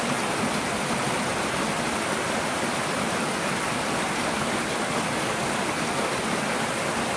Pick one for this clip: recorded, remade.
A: recorded